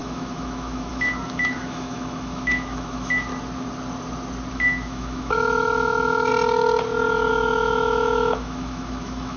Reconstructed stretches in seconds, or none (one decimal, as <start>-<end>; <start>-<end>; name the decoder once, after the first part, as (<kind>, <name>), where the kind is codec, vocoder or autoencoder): 0.0-3.3 (autoencoder, DAC-VAE); 4.5-6.3; 7.3-9.4